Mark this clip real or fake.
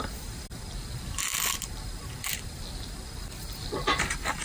real